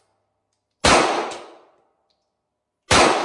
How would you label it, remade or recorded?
recorded